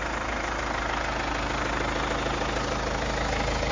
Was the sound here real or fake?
real